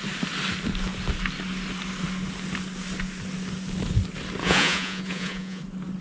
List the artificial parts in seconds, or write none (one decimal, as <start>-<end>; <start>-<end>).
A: 4.4-5.6